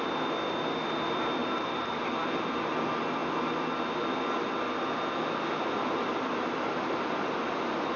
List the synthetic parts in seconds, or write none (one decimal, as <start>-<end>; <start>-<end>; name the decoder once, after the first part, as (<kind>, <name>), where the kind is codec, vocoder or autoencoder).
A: none